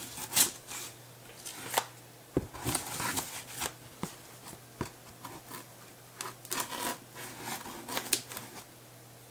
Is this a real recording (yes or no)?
yes